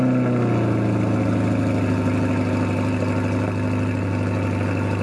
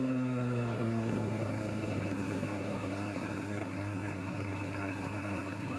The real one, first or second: first